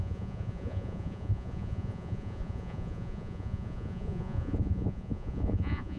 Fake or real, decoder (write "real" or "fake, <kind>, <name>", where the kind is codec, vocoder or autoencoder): fake, vocoder, Vocos